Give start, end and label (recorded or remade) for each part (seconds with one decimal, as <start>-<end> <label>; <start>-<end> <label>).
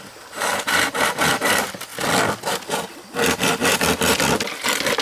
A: 0.0-1.9 remade; 1.9-5.0 recorded